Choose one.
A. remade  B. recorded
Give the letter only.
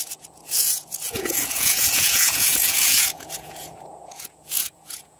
A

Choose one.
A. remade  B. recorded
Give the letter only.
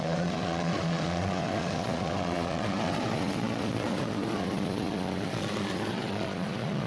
A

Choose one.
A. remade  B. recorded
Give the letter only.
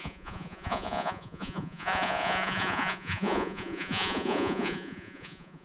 A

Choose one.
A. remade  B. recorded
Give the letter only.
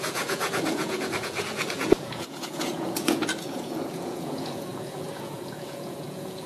A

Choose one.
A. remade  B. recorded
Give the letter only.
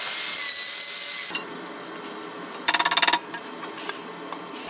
B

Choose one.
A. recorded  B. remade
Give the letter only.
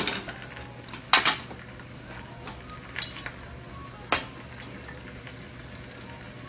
A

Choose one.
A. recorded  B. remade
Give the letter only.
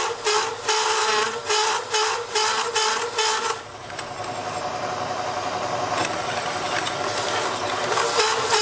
A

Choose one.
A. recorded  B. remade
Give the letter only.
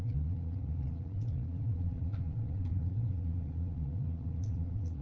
B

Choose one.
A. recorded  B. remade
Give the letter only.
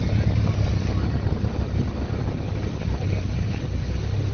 A